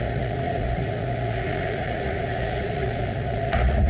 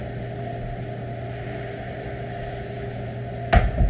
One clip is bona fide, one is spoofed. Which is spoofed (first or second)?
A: first